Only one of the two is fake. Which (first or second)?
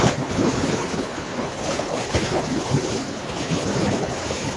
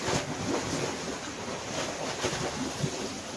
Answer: first